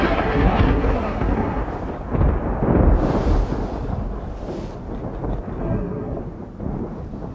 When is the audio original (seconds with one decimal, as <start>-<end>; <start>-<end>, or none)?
1.6-5.6; 6.2-7.3